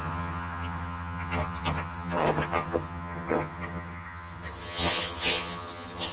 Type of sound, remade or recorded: remade